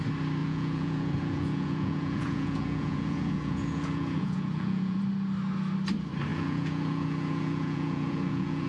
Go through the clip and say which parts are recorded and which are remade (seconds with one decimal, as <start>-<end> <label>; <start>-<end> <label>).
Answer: 0.0-0.4 recorded; 0.4-5.0 remade; 5.0-6.3 recorded; 6.3-8.7 remade